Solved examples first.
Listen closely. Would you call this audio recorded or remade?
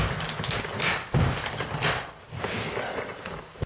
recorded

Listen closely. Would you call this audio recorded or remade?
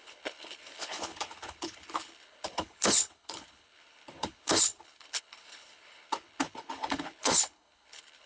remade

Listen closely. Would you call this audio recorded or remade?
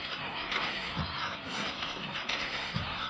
remade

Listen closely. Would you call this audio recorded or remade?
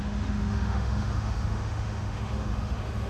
remade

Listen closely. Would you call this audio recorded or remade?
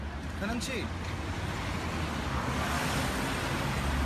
recorded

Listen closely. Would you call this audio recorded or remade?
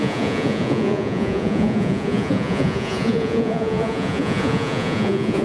remade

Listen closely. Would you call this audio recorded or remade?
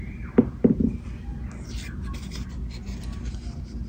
recorded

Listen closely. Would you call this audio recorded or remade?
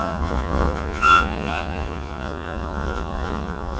remade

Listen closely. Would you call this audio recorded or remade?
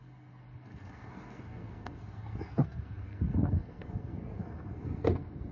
remade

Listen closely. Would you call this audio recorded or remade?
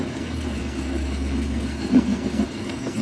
remade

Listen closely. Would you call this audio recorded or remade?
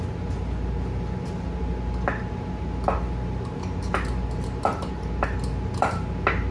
recorded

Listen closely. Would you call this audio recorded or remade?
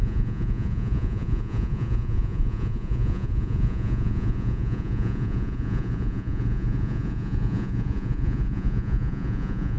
remade